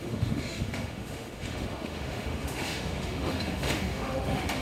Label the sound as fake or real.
fake